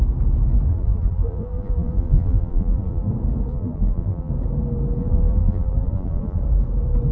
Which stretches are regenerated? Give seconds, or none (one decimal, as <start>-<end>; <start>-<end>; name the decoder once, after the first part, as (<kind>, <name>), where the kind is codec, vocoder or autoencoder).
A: 0.7-3.1 (vocoder, BigVGAN v2); 3.5-4.3; 5.0-6.4